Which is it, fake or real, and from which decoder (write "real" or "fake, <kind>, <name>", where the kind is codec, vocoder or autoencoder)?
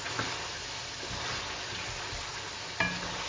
real